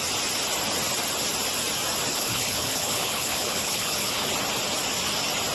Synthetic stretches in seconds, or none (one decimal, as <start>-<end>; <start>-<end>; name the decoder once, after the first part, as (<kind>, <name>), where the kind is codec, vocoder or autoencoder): 2.1-4.3 (codec, HILCodec)